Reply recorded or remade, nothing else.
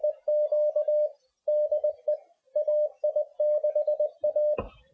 recorded